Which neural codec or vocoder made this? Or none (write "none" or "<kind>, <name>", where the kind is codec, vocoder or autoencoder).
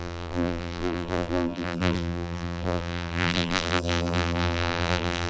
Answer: vocoder, BigVGAN v2